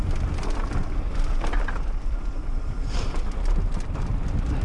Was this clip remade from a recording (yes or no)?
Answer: yes